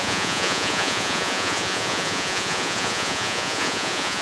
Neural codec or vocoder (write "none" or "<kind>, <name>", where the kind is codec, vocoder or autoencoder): vocoder, Vocos